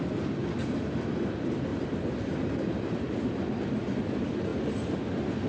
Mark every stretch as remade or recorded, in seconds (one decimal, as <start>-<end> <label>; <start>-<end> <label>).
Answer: 0.0-4.5 remade; 4.5-5.5 recorded